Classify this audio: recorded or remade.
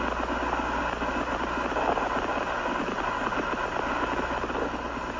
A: recorded